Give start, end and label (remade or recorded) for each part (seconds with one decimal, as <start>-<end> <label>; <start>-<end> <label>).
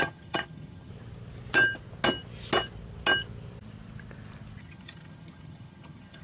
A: 0.0-0.9 remade; 0.9-4.6 recorded; 4.6-6.2 remade